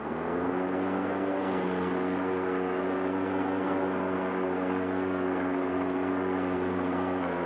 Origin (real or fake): fake